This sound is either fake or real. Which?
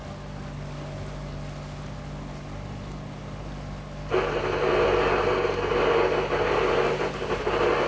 real